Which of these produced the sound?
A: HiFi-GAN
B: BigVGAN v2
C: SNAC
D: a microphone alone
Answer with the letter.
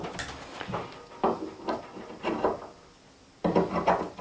D